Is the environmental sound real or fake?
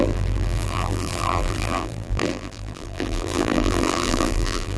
fake